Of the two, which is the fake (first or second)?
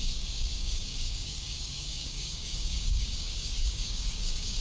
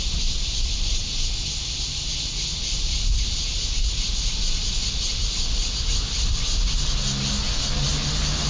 first